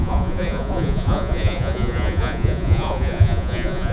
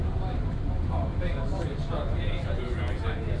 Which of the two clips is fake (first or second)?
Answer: first